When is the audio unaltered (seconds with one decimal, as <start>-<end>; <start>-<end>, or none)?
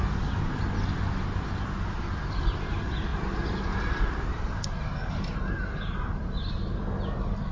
0.0-7.5